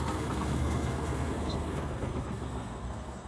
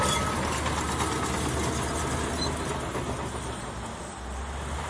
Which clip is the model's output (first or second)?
first